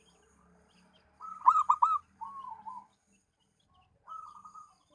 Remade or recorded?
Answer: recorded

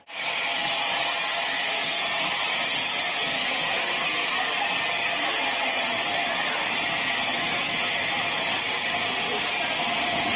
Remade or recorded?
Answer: recorded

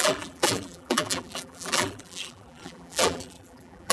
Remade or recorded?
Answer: remade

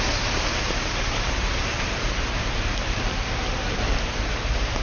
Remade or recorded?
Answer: remade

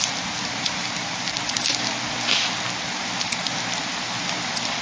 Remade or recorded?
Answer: recorded